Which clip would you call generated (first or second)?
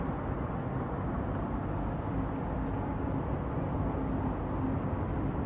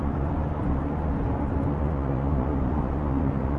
second